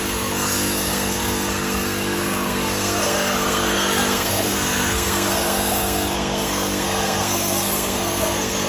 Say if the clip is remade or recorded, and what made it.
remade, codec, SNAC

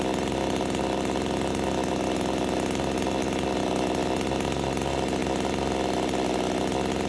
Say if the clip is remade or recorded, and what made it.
recorded